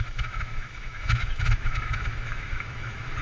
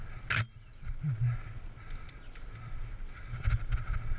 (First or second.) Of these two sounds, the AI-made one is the first